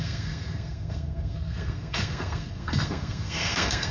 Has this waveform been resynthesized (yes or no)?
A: yes